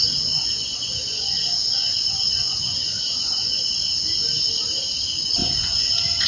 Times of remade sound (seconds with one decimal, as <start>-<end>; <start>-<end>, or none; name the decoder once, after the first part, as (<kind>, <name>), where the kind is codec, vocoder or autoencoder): 0.0-3.8 (vocoder, Vocos); 5.4-6.3